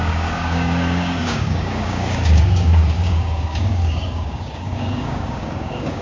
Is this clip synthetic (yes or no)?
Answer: yes